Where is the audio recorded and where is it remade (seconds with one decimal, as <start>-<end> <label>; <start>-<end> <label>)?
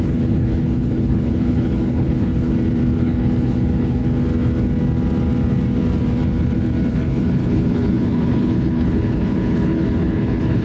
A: 0.0-2.5 remade; 2.5-3.0 recorded; 3.0-4.0 remade; 4.0-6.9 recorded; 6.9-10.6 remade